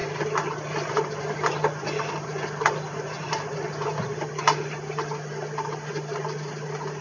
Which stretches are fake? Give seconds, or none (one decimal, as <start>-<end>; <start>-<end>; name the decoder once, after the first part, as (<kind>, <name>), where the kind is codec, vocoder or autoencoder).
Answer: none